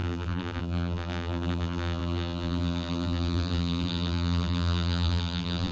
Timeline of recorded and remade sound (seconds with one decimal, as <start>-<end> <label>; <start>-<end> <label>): 0.0-5.7 remade